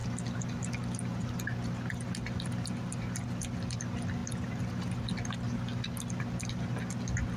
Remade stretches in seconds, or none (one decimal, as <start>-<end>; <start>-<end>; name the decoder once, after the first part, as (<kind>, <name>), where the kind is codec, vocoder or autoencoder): none